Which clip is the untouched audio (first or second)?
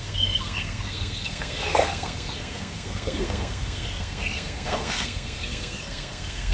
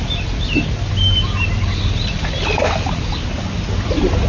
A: second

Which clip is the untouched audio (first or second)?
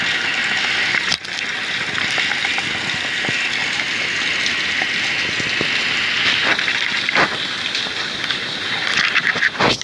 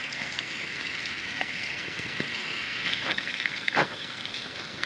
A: first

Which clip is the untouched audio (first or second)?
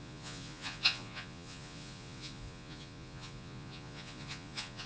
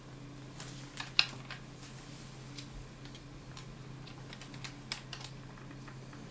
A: second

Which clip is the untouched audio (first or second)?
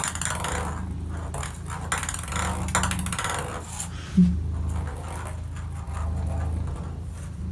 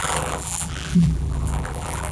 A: first